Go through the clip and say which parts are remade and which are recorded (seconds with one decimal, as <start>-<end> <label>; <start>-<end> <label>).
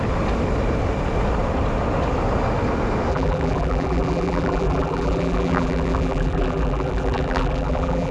0.0-3.1 recorded; 3.1-8.1 remade